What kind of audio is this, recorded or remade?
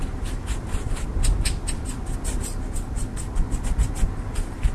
recorded